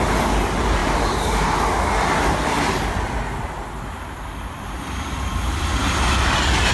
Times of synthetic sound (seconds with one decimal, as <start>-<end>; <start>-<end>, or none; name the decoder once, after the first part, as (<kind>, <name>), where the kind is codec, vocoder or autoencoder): none